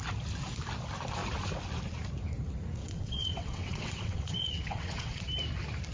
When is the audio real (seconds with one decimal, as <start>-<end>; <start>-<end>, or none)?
0.0-2.8; 5.2-5.9